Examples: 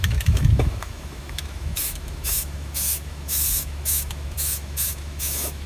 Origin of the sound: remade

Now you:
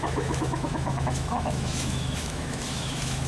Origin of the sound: remade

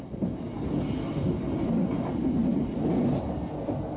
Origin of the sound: recorded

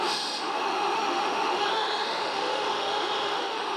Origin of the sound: remade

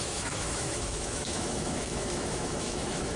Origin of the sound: remade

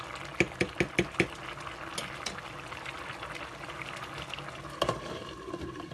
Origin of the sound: recorded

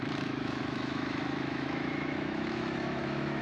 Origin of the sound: remade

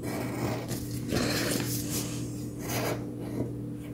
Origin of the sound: recorded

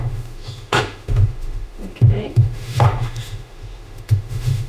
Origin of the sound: remade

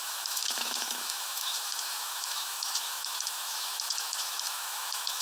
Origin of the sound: remade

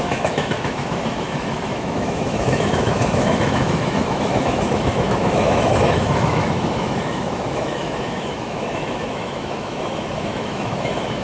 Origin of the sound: remade